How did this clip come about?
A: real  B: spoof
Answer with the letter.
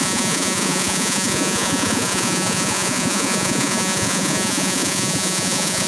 B